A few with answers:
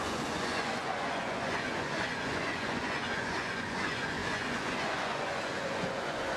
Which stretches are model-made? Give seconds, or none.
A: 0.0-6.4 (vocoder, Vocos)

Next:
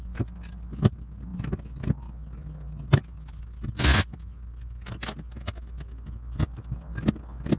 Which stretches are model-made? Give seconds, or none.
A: none